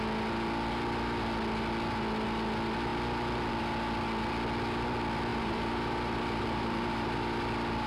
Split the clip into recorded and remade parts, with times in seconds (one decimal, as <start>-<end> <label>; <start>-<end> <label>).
0.0-5.3 recorded; 5.3-7.4 remade; 7.4-7.9 recorded